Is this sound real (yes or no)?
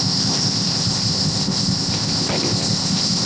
no